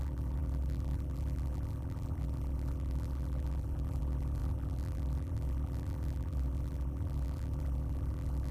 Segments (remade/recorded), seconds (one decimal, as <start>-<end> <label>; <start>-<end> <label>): 0.0-8.5 remade